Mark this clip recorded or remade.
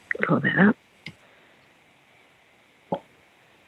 recorded